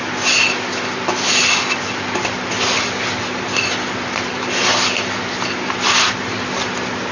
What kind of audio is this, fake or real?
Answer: real